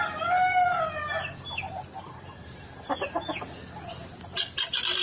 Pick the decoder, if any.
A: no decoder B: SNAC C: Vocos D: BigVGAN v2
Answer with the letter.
A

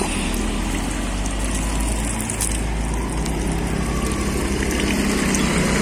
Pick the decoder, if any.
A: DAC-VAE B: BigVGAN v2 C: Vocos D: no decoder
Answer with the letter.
D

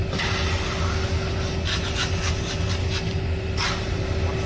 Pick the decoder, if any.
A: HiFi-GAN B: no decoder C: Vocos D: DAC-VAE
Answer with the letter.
B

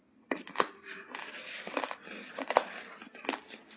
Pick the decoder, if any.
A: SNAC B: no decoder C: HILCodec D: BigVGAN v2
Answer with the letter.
B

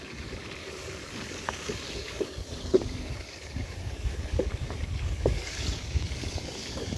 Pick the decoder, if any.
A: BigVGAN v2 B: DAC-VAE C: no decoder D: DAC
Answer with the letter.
D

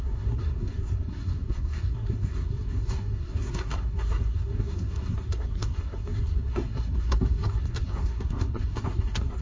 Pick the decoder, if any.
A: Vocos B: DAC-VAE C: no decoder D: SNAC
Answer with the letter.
D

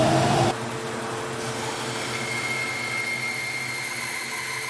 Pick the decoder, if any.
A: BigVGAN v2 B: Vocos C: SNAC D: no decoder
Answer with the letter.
D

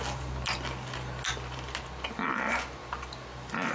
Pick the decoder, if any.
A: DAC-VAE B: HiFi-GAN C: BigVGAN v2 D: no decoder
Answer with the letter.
D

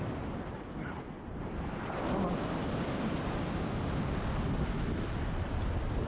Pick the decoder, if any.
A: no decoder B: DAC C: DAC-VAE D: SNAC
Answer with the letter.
A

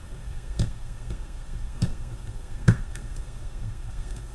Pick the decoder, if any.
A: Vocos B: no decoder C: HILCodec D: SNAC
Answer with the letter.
D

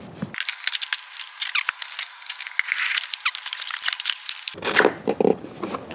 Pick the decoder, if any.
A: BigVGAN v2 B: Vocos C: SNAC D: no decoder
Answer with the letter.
D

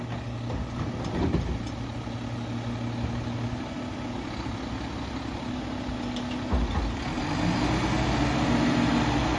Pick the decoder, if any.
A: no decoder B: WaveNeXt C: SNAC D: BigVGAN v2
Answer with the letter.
A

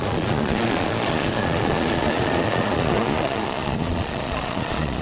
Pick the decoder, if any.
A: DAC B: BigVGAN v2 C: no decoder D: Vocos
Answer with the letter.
D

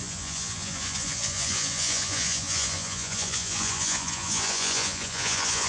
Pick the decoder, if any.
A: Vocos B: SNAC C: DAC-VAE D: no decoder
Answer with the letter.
A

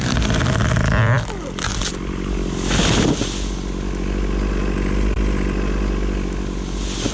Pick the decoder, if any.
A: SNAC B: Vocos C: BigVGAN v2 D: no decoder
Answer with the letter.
D